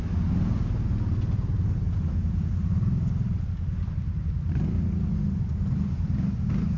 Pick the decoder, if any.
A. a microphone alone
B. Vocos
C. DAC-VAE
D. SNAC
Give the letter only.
A